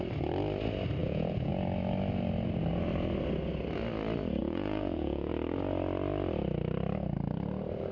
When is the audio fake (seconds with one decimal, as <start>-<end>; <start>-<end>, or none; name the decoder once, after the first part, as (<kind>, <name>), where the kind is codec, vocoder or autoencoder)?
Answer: 1.0-1.5 (vocoder, Vocos); 4.4-5.3